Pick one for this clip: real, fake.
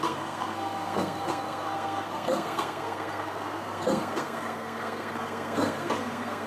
fake